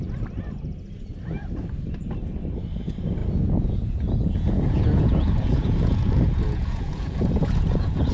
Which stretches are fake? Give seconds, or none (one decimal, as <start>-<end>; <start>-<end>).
3.2-8.1